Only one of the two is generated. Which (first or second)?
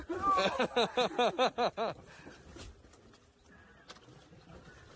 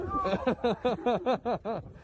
second